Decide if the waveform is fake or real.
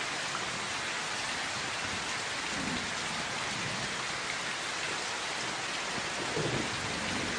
real